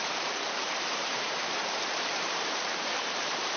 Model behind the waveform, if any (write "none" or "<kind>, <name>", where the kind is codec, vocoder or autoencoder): vocoder, BigVGAN v2